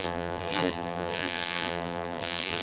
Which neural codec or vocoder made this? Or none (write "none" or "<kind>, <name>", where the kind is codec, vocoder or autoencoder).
vocoder, BigVGAN v2